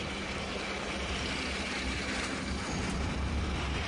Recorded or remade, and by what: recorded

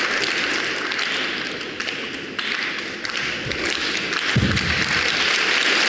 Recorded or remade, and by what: recorded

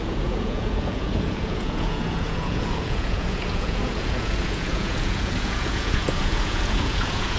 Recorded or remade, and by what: remade, vocoder, Vocos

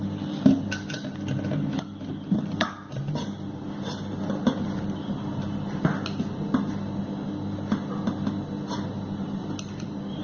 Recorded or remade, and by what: recorded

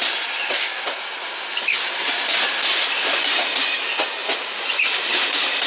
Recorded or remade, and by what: recorded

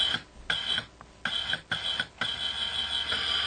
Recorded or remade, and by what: recorded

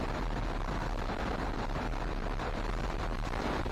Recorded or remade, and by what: recorded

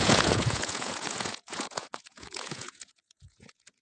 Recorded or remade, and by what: remade, vocoder, Vocos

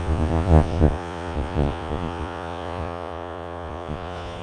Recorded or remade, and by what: remade, vocoder, Vocos